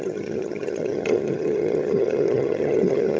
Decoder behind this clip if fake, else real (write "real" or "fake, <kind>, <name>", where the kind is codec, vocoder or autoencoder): fake, vocoder, HiFi-GAN